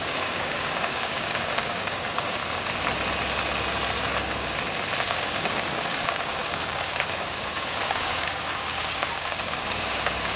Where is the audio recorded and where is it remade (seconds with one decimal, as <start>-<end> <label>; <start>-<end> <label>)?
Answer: 0.0-2.4 remade; 2.4-5.0 recorded; 5.0-10.4 remade